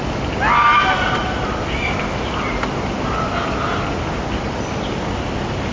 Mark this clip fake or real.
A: real